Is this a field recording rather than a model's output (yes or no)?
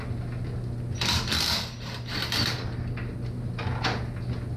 yes